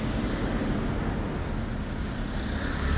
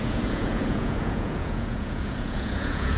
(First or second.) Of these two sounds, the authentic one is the first